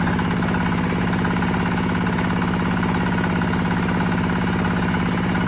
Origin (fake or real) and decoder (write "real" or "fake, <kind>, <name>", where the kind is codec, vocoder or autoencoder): real